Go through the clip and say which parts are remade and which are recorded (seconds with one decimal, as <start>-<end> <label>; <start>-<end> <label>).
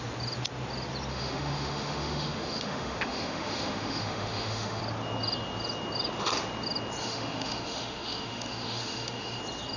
0.0-1.1 recorded; 1.1-4.8 remade; 4.8-7.0 recorded; 7.0-9.4 remade; 9.4-9.8 recorded